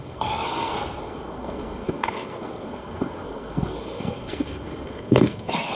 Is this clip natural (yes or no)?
no